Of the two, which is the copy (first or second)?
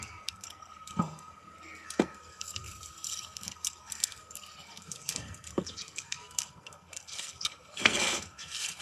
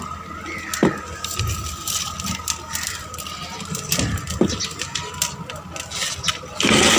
first